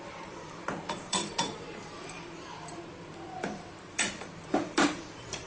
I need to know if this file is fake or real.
fake